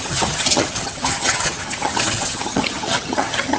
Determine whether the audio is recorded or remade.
remade